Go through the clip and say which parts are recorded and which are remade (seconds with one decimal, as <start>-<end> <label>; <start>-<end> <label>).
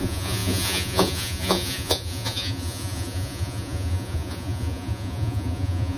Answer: 0.0-6.0 remade